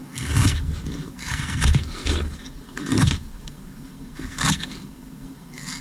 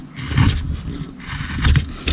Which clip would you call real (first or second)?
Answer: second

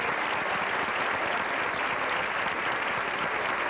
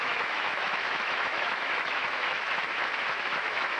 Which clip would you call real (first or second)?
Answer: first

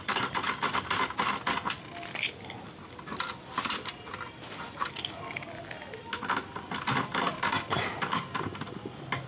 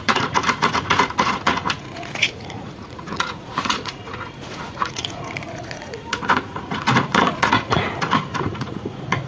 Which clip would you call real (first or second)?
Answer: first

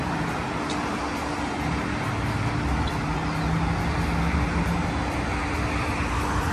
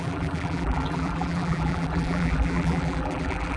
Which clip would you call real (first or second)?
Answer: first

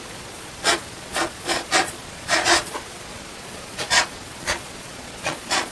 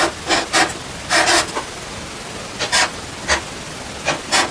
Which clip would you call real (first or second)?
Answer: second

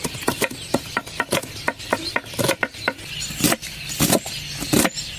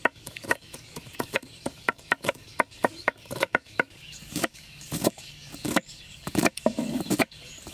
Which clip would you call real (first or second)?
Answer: first